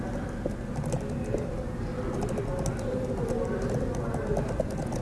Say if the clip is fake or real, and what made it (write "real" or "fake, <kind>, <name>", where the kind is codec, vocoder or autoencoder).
real